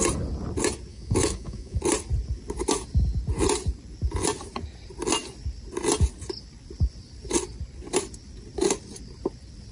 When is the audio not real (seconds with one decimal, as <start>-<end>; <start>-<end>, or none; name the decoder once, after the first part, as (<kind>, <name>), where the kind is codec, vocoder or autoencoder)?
0.9-1.8 (autoencoder, DAC-VAE)